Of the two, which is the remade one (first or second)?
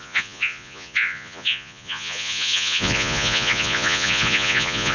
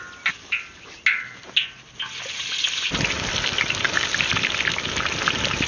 first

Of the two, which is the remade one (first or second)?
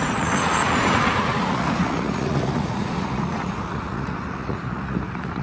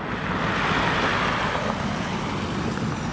first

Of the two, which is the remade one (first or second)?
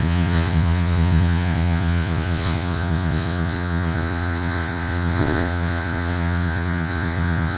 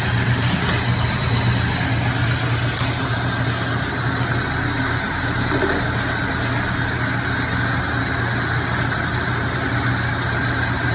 first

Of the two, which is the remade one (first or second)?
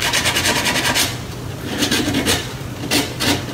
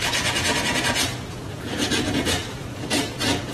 second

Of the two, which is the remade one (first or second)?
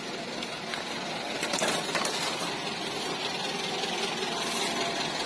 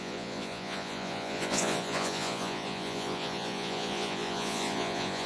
second